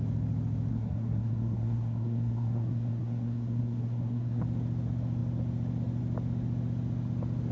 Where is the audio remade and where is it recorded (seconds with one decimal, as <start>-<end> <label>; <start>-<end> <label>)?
0.0-0.7 recorded; 0.7-4.4 remade; 4.4-7.5 recorded